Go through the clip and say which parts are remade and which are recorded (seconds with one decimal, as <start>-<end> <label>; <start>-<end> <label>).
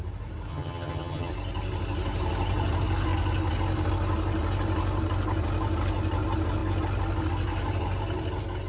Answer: 0.0-0.5 recorded; 0.5-1.3 remade; 1.3-8.7 recorded